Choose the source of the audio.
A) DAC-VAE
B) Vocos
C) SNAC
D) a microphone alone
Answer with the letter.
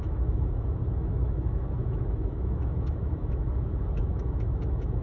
A